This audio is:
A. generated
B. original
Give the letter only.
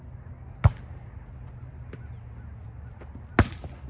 B